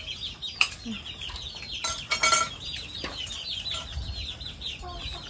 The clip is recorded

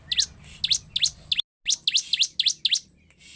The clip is recorded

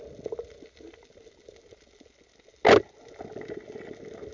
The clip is recorded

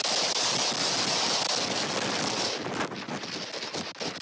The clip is recorded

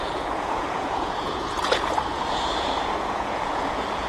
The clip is remade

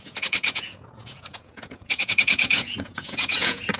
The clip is remade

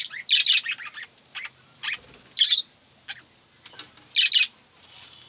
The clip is recorded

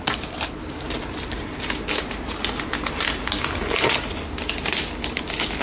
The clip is recorded